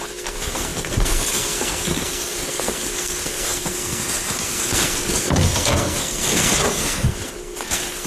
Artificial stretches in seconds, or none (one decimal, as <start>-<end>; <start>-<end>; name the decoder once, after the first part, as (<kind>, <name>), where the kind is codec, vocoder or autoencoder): 0.0-8.1 (codec, SNAC)